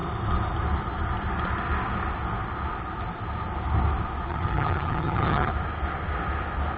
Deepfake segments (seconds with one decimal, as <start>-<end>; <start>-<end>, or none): 4.3-5.5

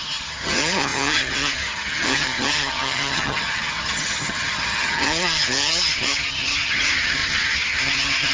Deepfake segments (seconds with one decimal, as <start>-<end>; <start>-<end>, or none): 0.0-8.3

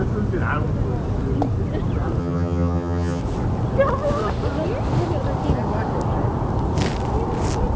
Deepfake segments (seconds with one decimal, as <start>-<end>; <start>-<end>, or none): 2.2-3.2

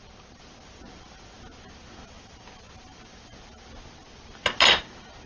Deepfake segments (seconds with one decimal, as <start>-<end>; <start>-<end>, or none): none